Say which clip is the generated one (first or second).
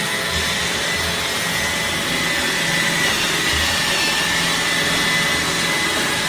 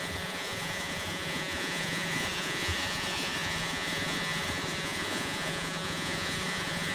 second